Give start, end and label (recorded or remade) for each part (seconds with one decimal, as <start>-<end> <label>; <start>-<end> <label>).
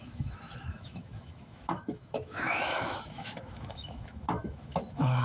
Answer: 0.0-5.2 remade